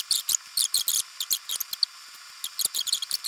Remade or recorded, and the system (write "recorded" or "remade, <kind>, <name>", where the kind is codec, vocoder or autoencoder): recorded